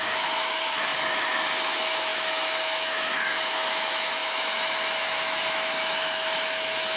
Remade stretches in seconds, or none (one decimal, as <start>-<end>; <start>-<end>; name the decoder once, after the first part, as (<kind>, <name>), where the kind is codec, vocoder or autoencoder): 0.0-7.0 (autoencoder, DAC-VAE)